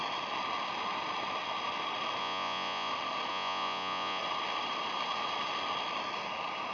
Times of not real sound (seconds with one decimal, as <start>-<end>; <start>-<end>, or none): 2.2-2.9; 3.3-4.2